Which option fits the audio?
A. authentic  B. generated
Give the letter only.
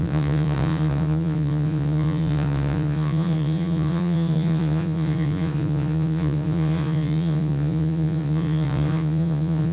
B